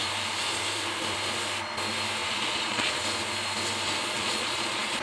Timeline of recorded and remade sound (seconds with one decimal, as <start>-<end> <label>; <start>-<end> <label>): 0.0-2.2 recorded; 2.2-3.0 remade; 3.0-4.0 recorded; 4.0-5.0 remade